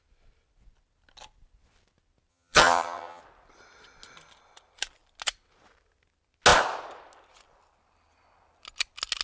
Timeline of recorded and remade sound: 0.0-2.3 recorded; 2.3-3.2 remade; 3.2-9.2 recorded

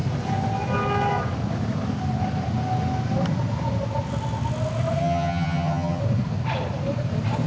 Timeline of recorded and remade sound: 0.0-5.0 recorded; 5.0-6.0 remade; 6.0-7.5 recorded